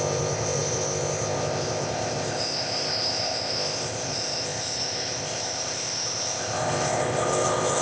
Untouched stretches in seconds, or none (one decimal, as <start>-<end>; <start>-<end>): none

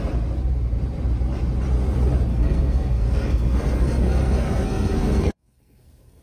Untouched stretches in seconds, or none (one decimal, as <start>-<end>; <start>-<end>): 0.0-2.3

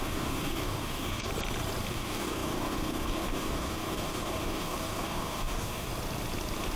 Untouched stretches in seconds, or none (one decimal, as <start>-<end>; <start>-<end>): 1.3-1.9; 5.9-6.8

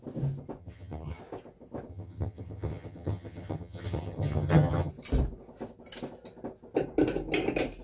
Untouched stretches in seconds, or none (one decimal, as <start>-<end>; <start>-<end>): 0.0-0.6; 1.2-1.9; 4.9-7.8

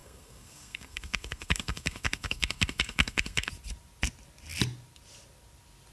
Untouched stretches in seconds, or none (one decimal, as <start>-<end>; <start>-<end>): 3.5-5.9

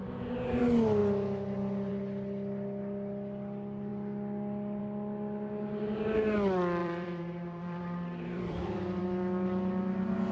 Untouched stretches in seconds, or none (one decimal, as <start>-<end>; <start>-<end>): 0.0-6.8; 9.0-10.3

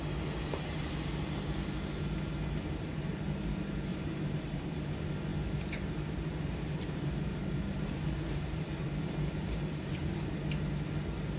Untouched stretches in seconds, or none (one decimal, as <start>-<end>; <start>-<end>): 0.0-3.9; 4.6-5.3; 10.5-11.4